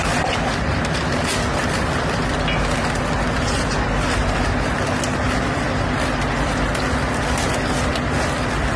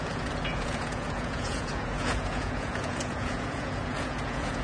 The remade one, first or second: second